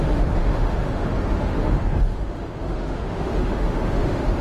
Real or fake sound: fake